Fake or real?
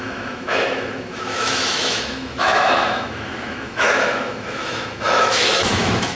fake